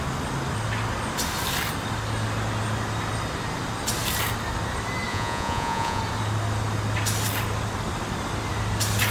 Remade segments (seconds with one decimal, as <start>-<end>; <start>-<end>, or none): 5.1-6.0